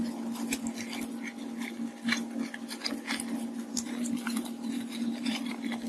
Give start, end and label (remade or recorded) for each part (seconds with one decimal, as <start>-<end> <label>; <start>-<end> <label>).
0.0-3.7 recorded; 3.7-5.5 remade; 5.5-5.9 recorded